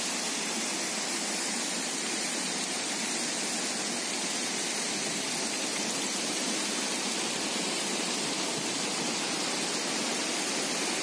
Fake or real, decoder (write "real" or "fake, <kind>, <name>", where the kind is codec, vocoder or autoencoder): real